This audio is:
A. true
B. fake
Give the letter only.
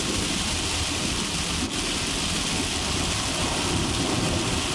A